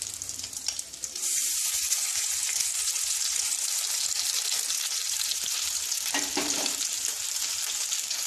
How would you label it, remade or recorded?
remade